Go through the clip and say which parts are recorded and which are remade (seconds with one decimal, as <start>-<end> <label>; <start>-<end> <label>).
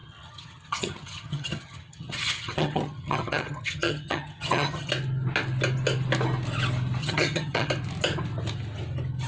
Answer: 0.0-4.9 remade; 4.9-7.0 recorded; 7.0-7.7 remade; 7.7-9.3 recorded